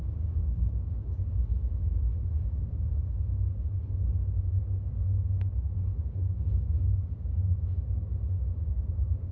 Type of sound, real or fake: fake